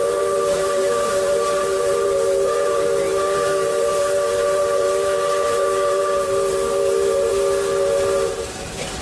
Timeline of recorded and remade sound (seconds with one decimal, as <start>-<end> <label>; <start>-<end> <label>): 0.0-7.3 remade; 7.3-9.0 recorded